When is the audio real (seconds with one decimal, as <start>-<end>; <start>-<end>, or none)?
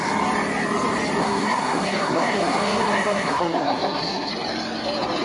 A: 0.0-1.2; 4.3-5.2